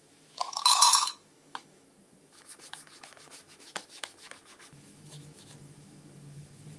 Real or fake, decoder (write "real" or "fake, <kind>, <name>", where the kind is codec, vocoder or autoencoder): fake, autoencoder, DAC-VAE